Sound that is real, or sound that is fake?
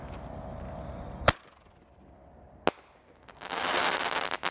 real